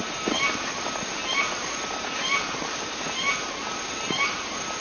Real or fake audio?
real